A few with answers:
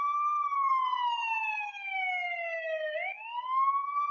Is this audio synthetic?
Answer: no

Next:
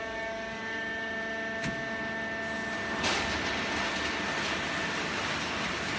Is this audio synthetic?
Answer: no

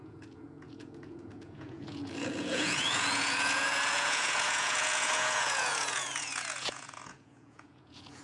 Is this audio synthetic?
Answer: yes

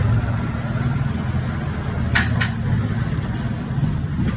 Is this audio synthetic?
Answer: no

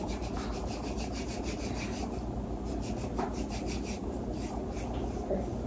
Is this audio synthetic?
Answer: no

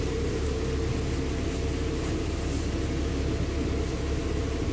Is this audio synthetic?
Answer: no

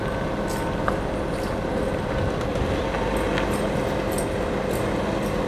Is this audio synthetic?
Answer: no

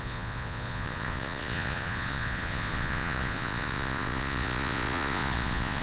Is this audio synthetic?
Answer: yes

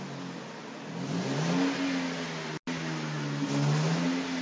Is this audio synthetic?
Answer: no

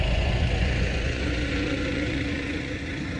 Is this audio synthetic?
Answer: yes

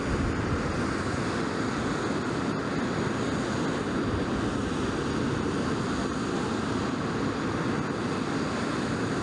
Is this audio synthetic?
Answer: no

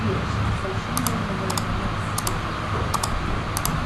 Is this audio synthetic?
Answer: no